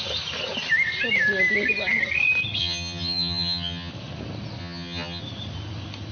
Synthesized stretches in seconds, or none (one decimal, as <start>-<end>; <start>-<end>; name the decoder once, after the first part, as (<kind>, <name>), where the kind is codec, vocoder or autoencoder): 2.6-3.9 (vocoder, HiFi-GAN); 4.6-5.2